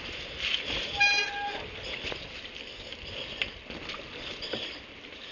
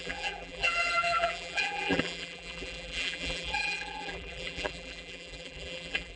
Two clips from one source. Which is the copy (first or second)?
second